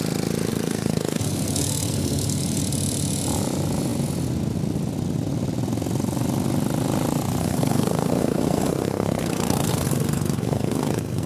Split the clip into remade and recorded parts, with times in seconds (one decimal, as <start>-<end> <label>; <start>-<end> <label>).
0.0-0.5 recorded; 0.5-2.6 remade; 2.6-7.4 recorded; 7.4-11.3 remade